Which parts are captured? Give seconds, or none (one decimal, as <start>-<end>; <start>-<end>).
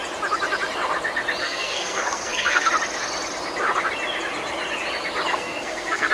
0.0-1.4; 2.7-5.3